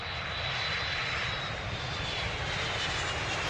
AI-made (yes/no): yes